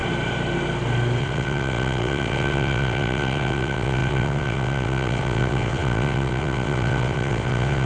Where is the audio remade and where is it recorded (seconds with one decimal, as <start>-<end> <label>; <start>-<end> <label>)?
0.0-1.2 recorded; 1.2-7.9 remade